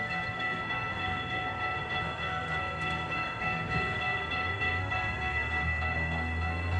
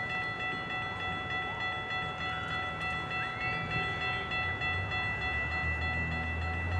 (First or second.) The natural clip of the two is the second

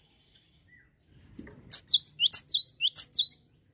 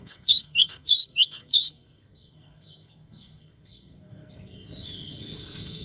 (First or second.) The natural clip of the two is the first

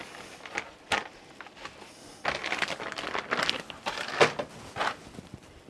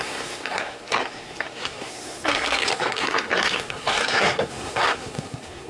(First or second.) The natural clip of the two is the first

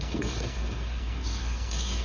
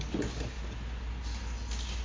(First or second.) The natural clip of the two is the second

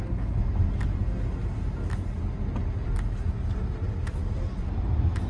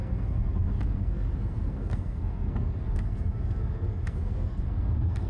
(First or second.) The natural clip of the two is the first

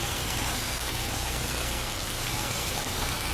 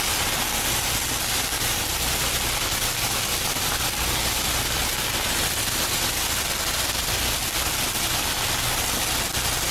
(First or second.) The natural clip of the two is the second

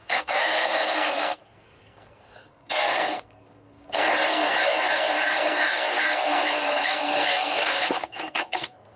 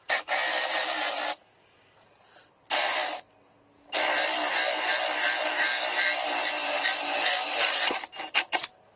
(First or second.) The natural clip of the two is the second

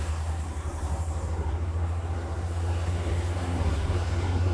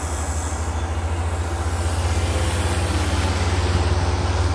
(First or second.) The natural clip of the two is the second